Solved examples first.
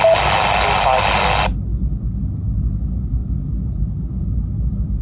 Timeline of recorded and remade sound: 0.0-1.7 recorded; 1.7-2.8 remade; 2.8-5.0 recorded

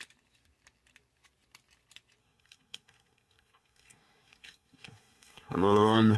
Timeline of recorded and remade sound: 0.0-2.2 recorded; 2.2-6.2 remade